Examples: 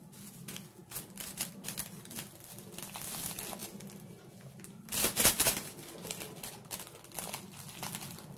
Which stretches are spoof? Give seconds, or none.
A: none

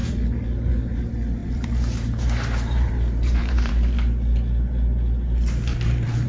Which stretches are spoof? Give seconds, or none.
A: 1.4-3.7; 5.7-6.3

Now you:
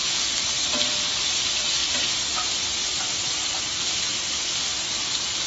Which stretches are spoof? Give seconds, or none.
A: 0.0-1.4; 1.8-2.3